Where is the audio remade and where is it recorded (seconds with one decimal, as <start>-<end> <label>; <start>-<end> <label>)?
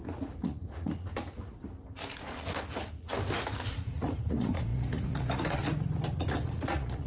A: 0.0-1.6 remade; 1.6-2.7 recorded; 2.7-3.1 remade; 3.1-3.7 recorded; 3.7-7.1 remade